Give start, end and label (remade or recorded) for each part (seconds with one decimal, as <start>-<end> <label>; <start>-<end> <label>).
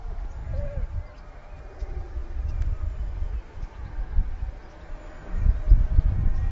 0.0-6.5 recorded